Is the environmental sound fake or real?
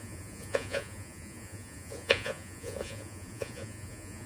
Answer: fake